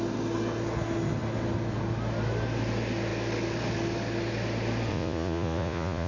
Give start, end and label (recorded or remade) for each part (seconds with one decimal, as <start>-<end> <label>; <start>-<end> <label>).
0.0-4.9 recorded; 4.9-6.1 remade